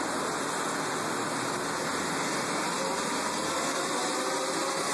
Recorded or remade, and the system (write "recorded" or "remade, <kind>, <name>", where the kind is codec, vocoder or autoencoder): recorded